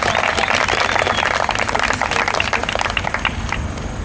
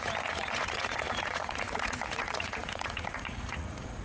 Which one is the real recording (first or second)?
first